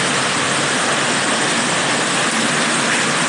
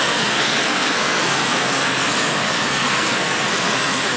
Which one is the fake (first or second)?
second